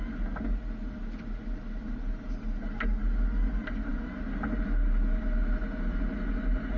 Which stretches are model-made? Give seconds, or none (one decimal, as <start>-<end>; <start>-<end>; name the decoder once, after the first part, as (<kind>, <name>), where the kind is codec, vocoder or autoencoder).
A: none